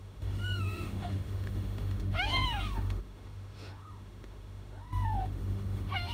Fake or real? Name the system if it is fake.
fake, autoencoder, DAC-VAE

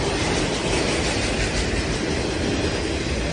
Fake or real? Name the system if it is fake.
real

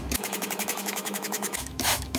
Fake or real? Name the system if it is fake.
fake, autoencoder, DAC-VAE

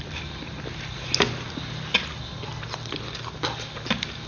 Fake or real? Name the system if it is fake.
real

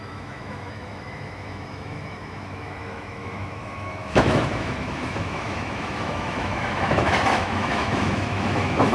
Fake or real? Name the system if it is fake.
fake, autoencoder, DAC-VAE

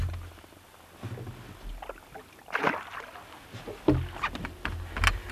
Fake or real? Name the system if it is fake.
real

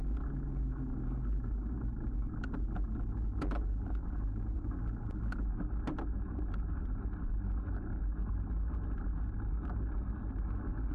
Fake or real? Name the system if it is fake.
real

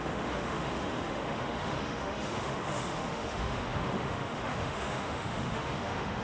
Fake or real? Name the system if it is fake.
fake, autoencoder, DAC-VAE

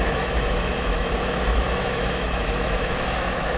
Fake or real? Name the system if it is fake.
fake, autoencoder, DAC-VAE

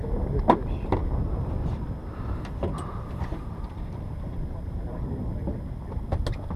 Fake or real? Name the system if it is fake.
real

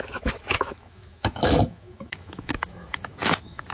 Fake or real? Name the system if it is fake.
fake, autoencoder, DAC-VAE